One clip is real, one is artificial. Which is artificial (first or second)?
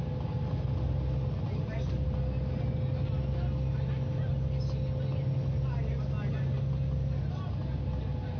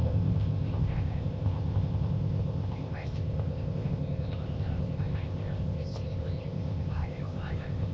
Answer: second